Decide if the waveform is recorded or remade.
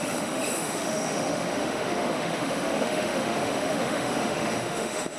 remade